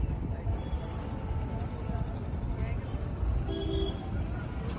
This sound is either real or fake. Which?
real